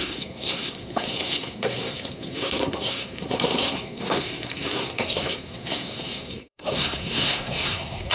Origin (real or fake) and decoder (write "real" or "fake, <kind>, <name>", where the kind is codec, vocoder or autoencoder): fake, codec, SNAC